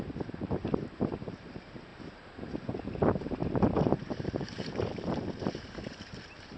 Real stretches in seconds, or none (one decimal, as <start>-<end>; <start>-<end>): 1.9-2.9